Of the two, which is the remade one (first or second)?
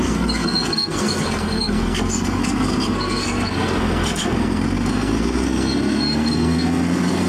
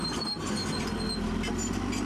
first